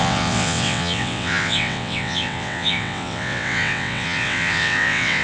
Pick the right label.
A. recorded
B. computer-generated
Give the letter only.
B